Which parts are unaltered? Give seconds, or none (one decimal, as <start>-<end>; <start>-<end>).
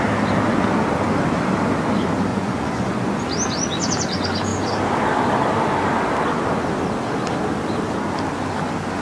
0.0-2.3; 3.2-9.0